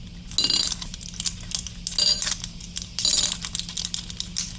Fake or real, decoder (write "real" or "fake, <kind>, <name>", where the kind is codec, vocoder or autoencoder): real